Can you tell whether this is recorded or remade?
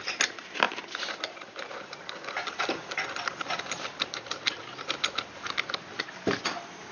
recorded